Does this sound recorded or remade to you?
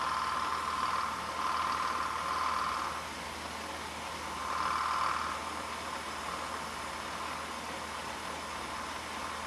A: recorded